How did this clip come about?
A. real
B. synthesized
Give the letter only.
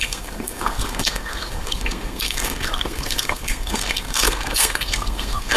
B